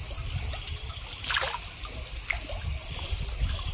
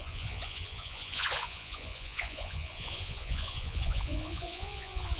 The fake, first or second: second